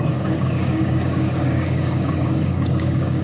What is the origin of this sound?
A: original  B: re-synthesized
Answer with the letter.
B